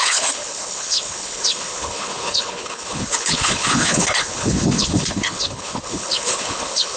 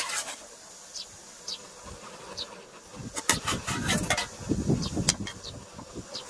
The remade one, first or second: first